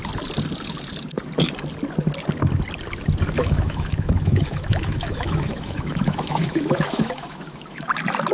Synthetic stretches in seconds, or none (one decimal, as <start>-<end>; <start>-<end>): 3.4-7.9